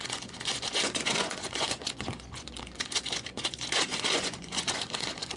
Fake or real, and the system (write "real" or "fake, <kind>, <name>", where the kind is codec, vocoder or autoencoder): fake, vocoder, Vocos